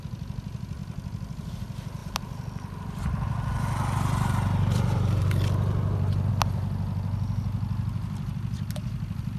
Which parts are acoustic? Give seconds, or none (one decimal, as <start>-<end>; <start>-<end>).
0.0-0.8; 1.5-9.4